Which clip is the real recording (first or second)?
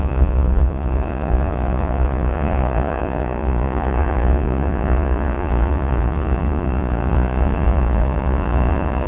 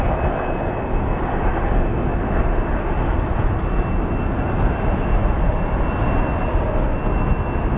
second